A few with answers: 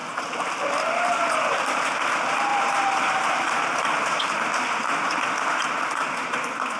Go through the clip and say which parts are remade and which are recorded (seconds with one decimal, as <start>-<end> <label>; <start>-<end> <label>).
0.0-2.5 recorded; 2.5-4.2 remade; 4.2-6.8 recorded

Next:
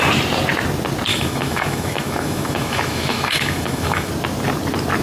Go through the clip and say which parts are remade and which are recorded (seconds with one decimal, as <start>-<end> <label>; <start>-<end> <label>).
0.0-1.1 recorded; 1.1-4.1 remade; 4.1-5.0 recorded

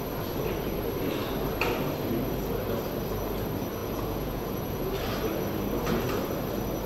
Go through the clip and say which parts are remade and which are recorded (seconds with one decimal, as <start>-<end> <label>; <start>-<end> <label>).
0.0-3.8 recorded; 3.8-4.9 remade; 4.9-6.9 recorded